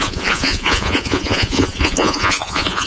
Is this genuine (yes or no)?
no